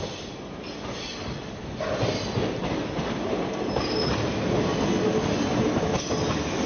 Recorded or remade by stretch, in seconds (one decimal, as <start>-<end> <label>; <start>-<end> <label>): 0.0-6.7 recorded